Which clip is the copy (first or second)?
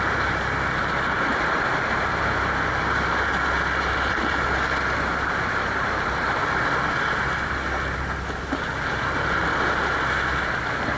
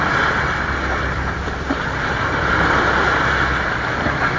second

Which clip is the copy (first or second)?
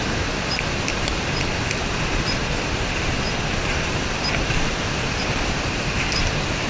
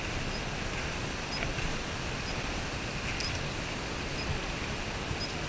first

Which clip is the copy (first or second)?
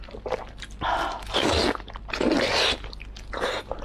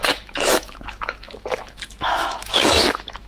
second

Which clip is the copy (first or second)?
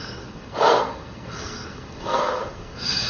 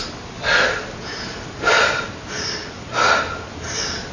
first